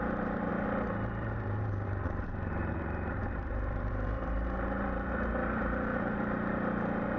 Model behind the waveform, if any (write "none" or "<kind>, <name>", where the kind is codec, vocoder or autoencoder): vocoder, BigVGAN v2